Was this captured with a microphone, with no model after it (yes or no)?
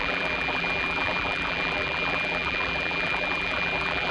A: no